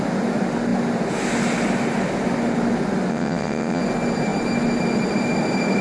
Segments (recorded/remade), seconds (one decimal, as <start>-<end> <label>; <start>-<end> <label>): 0.0-3.1 recorded; 3.1-3.8 remade; 3.8-5.8 recorded